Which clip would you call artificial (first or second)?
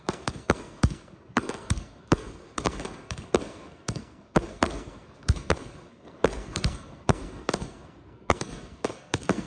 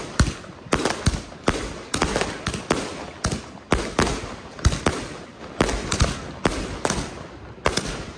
first